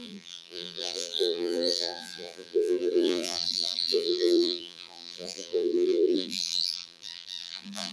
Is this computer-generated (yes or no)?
yes